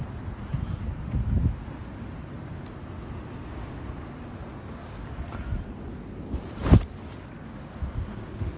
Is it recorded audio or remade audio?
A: recorded